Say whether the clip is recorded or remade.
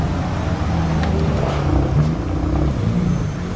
recorded